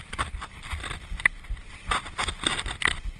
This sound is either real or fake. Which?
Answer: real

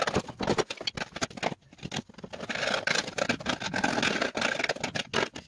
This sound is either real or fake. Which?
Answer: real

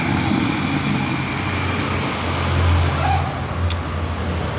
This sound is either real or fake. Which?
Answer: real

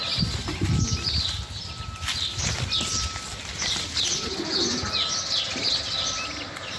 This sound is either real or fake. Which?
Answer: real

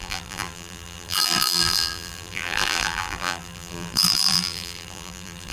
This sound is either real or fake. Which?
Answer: fake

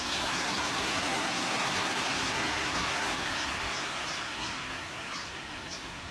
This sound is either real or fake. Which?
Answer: fake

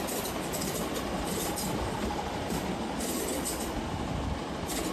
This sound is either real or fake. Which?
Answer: real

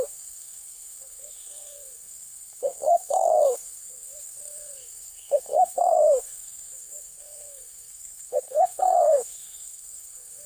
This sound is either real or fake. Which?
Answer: fake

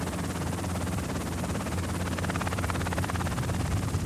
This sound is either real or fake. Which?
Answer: fake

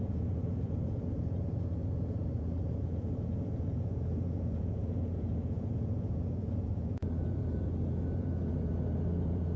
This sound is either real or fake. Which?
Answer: fake